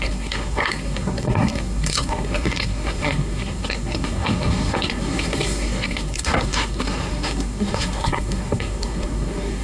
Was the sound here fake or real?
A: fake